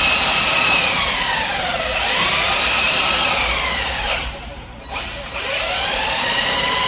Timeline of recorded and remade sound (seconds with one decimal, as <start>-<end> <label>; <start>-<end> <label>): 0.0-6.9 remade